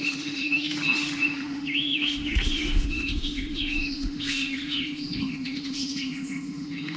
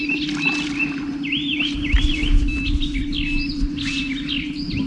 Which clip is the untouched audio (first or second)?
second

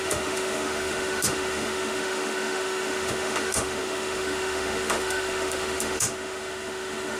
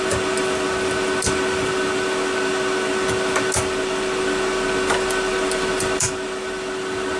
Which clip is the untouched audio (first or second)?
second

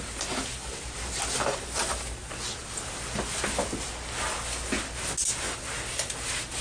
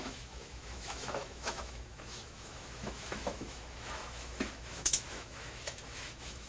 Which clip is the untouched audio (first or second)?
first